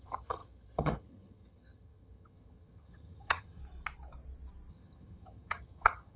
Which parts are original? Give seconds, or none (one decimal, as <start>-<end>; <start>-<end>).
3.6-4.7